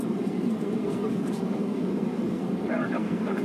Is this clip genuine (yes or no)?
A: no